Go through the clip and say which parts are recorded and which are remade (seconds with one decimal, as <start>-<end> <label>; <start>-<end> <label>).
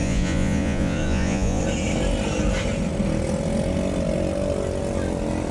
0.0-1.6 remade; 1.6-5.5 recorded